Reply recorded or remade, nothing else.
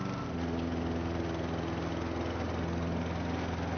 recorded